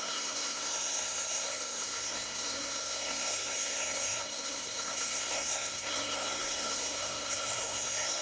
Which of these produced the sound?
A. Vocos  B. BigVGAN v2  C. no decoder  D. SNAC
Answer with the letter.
D